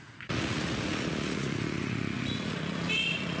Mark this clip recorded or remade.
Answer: remade